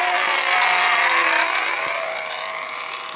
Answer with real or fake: fake